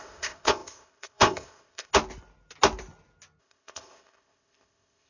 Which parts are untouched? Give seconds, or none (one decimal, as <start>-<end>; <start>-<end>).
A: 1.9-3.4